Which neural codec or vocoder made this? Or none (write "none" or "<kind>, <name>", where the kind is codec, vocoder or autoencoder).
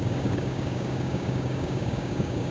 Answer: codec, DAC